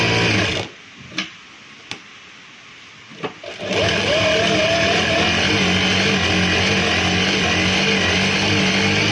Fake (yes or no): no